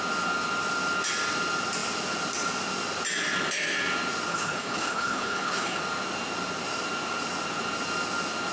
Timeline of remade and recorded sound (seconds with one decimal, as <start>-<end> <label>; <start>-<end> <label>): 0.0-4.3 recorded; 4.3-5.8 remade; 5.8-8.5 recorded